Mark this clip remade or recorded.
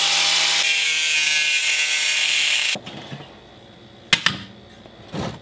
recorded